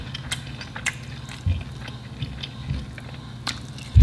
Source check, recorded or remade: recorded